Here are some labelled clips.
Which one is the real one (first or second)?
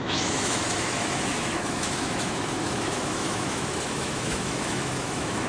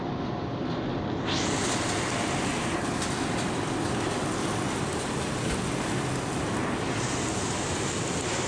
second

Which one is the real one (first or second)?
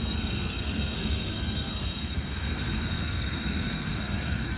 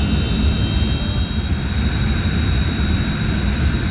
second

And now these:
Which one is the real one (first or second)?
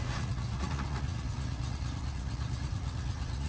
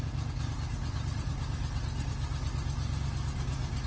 second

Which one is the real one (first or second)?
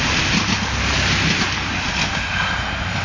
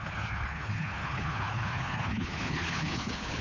first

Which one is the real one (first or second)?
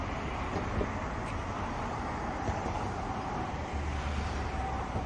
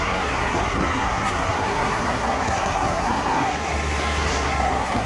first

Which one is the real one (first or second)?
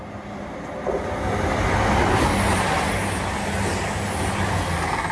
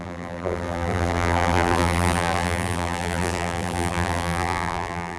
first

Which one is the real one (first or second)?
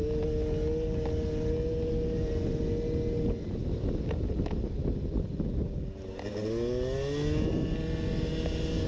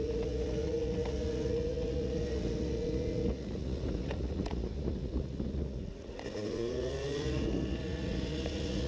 first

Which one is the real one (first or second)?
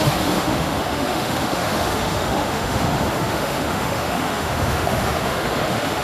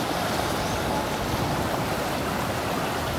second